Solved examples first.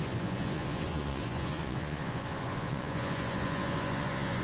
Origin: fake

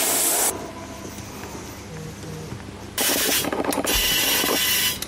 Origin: real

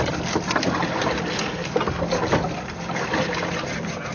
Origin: real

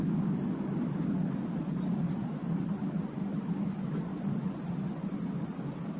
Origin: real